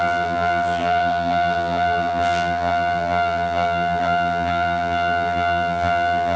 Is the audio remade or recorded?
remade